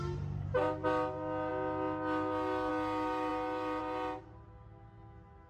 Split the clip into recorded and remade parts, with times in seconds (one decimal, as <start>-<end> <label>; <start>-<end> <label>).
0.0-5.5 recorded